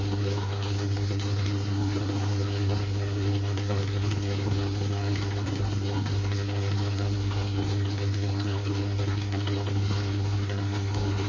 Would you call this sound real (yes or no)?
no